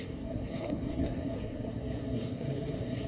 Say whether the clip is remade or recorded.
remade